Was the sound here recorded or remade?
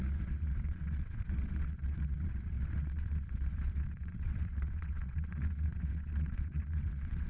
remade